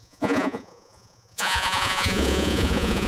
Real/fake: fake